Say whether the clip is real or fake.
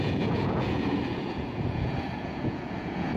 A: fake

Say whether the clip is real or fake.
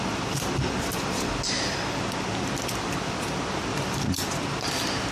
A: real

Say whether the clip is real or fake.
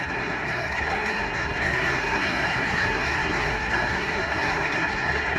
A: fake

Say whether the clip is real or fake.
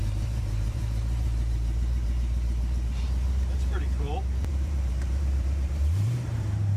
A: fake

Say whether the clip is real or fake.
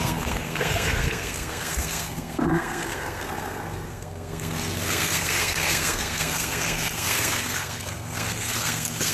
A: fake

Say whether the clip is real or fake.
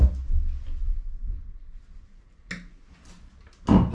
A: real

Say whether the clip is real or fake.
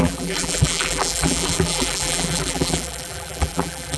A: fake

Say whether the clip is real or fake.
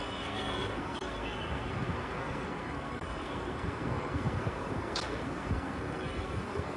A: fake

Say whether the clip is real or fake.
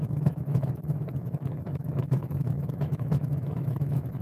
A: fake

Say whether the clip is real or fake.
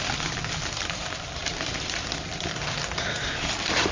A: fake